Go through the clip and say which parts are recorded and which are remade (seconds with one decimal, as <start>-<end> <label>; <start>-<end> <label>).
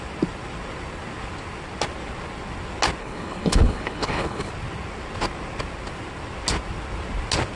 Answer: 0.0-3.0 recorded; 3.0-4.5 remade; 4.5-7.6 recorded